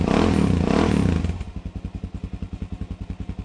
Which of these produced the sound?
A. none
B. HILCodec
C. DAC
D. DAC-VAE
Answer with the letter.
A